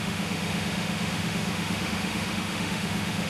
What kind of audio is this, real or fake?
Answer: fake